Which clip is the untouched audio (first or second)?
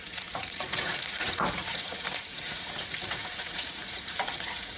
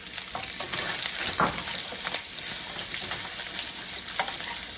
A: second